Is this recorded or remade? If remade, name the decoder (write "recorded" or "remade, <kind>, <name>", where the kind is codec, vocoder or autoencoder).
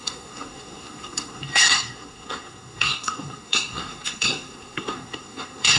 remade, codec, SNAC